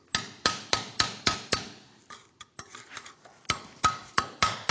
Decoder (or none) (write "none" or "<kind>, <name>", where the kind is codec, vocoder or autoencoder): none